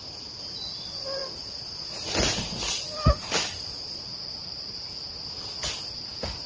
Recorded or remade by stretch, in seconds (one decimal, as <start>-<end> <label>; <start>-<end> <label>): 0.0-6.5 recorded